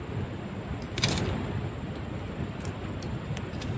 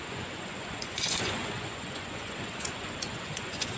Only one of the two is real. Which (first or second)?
first